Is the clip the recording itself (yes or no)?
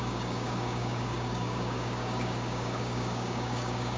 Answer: no